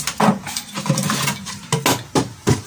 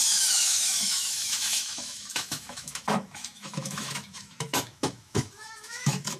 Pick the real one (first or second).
first